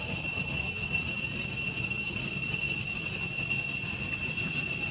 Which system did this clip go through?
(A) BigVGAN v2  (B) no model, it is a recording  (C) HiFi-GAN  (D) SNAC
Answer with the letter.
B